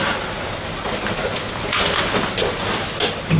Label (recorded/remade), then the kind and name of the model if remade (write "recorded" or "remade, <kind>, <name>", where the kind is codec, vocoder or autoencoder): recorded